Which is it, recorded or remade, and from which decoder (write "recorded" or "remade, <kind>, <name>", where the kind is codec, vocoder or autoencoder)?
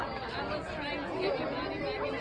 recorded